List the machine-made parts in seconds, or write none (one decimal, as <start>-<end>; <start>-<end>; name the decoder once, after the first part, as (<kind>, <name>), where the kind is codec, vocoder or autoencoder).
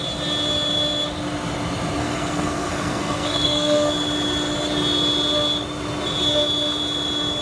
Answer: 2.0-3.9 (codec, SNAC)